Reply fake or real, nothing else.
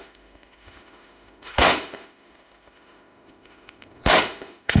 fake